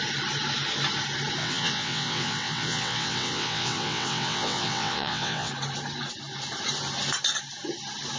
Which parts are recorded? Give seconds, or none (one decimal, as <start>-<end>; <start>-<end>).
0.0-1.4; 5.5-8.2